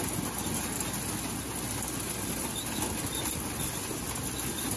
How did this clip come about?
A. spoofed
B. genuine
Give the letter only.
B